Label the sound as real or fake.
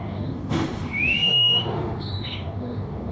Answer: fake